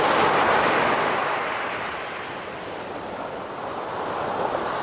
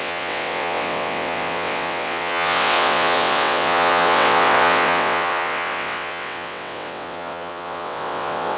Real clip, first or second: first